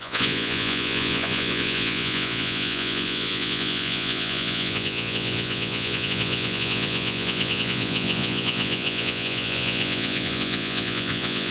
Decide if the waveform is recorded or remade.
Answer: remade